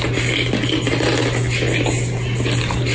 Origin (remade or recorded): recorded